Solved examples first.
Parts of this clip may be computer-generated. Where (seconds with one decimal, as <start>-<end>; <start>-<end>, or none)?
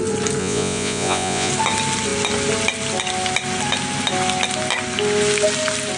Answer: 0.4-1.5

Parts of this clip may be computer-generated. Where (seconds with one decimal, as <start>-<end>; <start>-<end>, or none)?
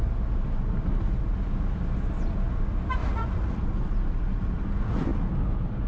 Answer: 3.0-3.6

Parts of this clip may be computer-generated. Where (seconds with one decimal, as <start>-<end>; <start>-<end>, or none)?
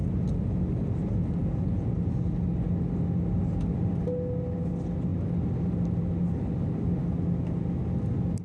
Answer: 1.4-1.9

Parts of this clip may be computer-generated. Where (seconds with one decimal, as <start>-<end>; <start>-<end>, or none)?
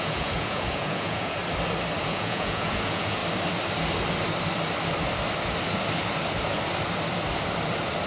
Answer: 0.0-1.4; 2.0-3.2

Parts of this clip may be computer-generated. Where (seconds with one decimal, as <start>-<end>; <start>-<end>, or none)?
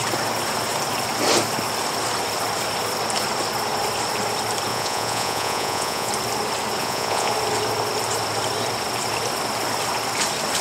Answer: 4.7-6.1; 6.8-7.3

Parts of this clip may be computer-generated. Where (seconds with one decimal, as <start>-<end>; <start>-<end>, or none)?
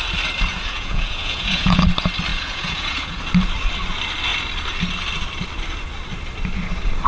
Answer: 0.5-1.8; 2.3-3.2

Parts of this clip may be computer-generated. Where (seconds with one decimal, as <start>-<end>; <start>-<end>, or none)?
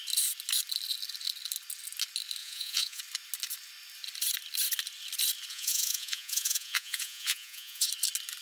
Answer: 2.4-3.0; 5.5-7.9